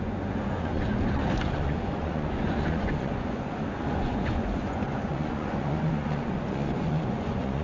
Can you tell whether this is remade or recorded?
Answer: remade